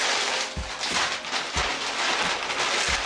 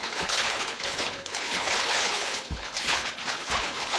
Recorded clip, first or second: first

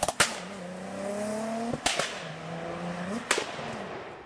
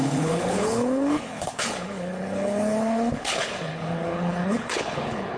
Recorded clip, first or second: first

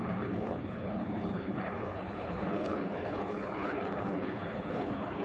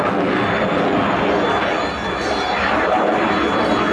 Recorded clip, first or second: second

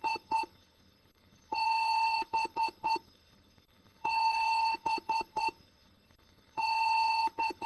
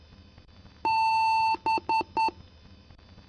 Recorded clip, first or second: second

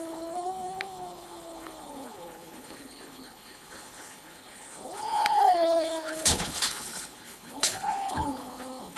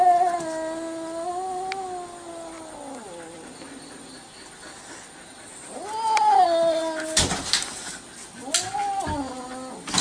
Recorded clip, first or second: second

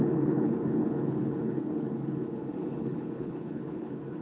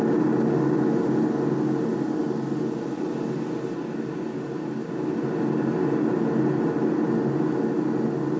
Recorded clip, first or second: second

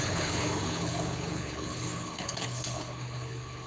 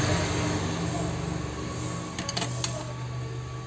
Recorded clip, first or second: second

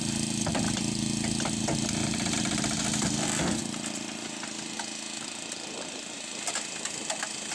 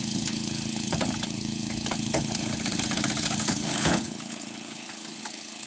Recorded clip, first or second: first